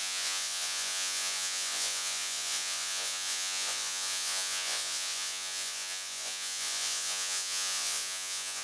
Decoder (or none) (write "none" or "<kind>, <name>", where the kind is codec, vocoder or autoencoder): vocoder, Vocos